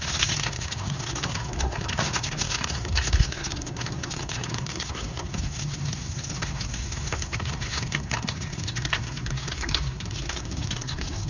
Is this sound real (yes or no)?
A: no